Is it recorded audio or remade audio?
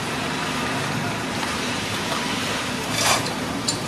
remade